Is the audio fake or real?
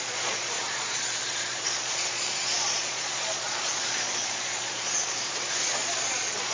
fake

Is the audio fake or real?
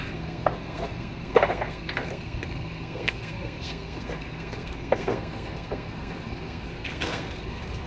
fake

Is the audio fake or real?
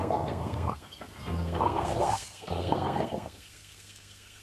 fake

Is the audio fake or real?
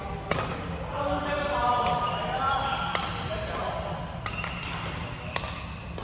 real